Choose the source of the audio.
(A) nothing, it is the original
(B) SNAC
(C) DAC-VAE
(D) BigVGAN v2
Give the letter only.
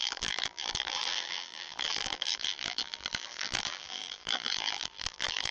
D